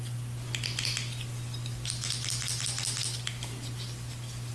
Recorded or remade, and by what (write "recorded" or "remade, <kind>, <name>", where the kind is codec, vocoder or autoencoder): recorded